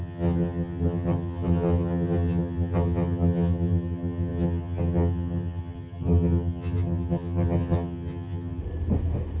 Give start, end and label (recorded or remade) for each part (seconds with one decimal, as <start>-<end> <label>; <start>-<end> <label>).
0.0-8.6 remade; 8.6-9.4 recorded